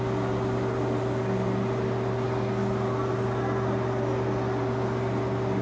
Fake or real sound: real